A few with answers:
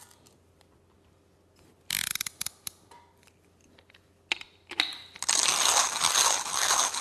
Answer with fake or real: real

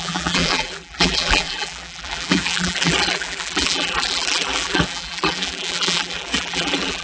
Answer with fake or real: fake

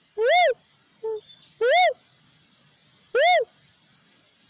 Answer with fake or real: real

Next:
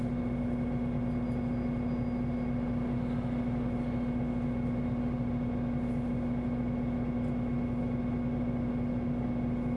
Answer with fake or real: real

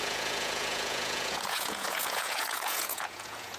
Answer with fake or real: fake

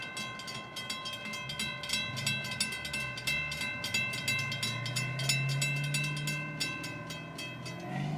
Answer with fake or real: real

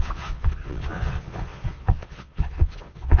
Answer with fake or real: fake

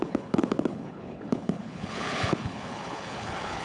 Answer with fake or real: fake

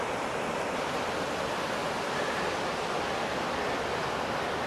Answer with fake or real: real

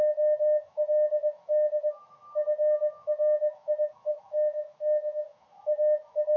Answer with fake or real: fake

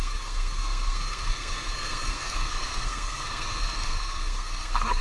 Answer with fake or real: fake